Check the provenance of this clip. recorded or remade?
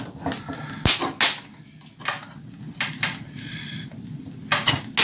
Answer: recorded